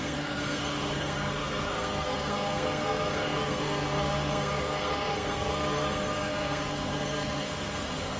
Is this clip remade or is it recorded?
remade